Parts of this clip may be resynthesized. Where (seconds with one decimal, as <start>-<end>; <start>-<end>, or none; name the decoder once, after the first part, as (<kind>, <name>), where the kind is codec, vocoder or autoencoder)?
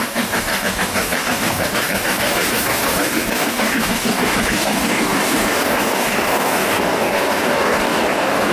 0.0-8.5 (codec, DAC)